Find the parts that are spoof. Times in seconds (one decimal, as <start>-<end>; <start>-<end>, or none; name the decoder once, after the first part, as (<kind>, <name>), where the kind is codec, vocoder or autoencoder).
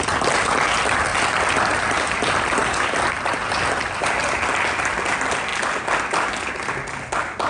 1.1-2.2 (vocoder, BigVGAN v2); 2.6-3.3